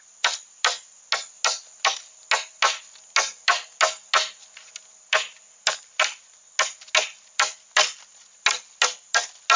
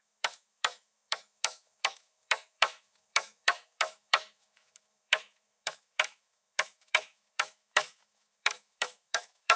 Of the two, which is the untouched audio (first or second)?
first